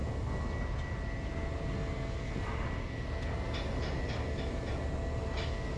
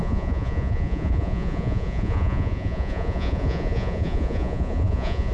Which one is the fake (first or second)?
second